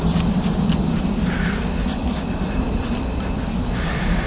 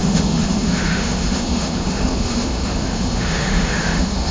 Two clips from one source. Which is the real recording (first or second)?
first